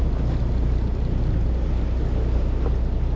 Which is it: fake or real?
real